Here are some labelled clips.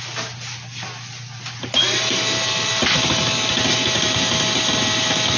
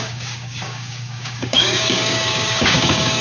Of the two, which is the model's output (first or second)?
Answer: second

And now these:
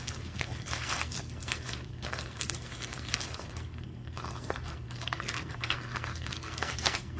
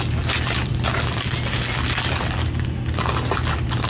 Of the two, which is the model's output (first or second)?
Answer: first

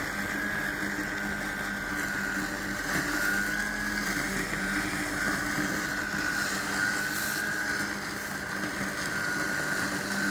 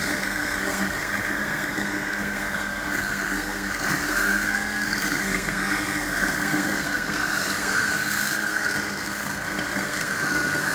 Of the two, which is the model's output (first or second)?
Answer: second